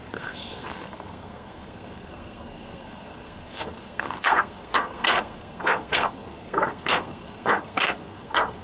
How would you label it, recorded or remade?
remade